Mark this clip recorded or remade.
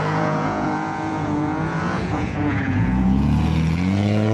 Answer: remade